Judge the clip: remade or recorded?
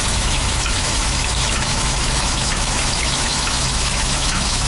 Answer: remade